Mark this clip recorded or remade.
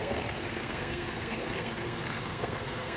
remade